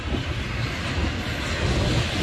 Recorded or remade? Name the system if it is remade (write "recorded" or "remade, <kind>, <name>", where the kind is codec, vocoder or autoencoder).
recorded